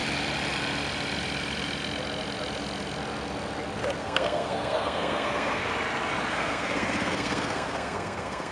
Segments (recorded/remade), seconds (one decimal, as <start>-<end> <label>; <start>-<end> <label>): 0.0-4.0 recorded; 4.0-5.6 remade; 5.6-6.3 recorded; 6.3-8.5 remade